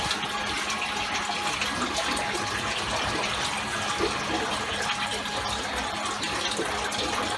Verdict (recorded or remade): recorded